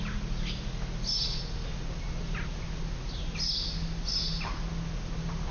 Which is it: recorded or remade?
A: recorded